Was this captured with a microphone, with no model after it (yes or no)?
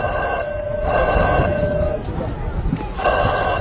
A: yes